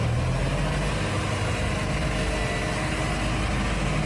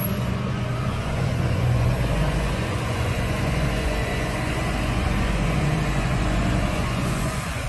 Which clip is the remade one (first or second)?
second